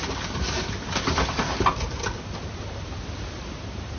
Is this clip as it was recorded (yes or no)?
yes